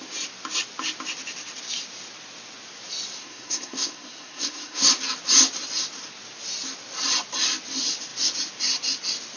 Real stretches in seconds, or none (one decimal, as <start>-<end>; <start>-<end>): 0.0-3.2; 4.9-9.4